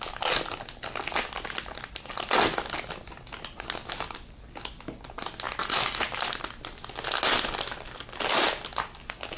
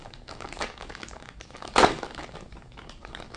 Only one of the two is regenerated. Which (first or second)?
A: second